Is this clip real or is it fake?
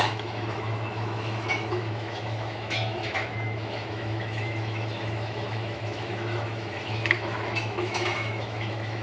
fake